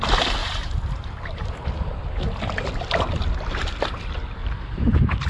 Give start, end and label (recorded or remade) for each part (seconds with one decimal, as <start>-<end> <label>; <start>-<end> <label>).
0.0-0.4 recorded; 0.4-2.0 remade; 2.0-4.4 recorded; 4.4-5.3 remade